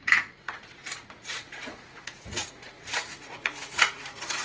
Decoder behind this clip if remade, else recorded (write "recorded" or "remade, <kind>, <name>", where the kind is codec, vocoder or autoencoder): remade, vocoder, Vocos